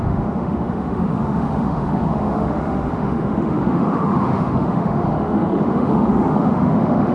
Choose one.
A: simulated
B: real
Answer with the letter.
A